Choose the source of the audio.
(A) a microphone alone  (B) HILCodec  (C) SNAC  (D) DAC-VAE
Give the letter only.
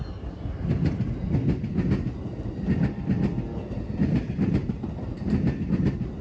A